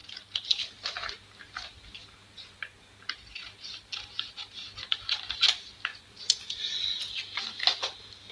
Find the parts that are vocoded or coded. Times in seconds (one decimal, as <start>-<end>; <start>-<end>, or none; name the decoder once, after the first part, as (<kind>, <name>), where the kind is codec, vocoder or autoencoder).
2.4-2.9 (vocoder, Vocos); 5.9-7.0